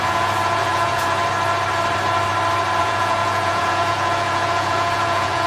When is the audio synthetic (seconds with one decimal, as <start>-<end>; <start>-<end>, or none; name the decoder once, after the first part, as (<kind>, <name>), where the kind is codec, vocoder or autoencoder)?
0.0-1.2 (vocoder, Vocos); 2.8-5.5

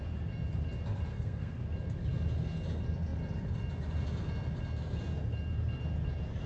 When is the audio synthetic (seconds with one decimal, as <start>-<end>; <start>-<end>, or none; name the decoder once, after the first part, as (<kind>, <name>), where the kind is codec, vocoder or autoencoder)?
1.1-1.6 (codec, SNAC)